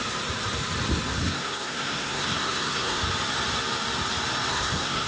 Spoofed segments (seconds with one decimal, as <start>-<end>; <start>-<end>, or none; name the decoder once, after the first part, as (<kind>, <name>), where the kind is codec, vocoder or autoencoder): 1.2-3.0 (codec, SNAC); 4.5-5.1